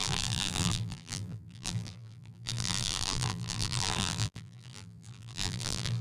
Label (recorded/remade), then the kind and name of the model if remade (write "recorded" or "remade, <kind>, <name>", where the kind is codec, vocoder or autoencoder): remade, vocoder, BigVGAN v2